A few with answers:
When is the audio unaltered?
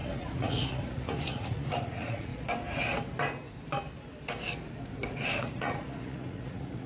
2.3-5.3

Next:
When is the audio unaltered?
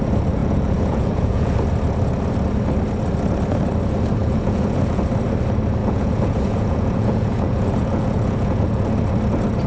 0.0-0.4; 1.5-4.2; 5.0-5.8; 8.9-9.7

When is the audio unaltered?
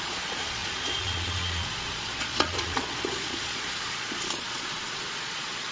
none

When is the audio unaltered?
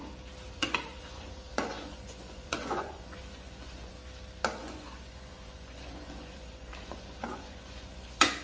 0.0-0.5; 4.0-4.6